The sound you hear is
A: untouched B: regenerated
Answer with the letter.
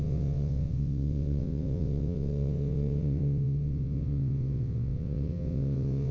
B